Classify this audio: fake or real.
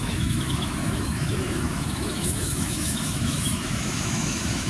fake